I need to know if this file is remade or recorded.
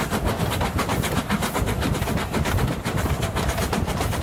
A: recorded